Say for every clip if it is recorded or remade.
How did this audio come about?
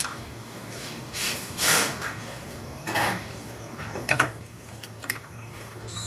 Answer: remade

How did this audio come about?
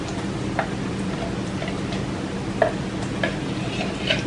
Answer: recorded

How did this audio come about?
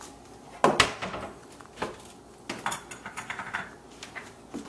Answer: recorded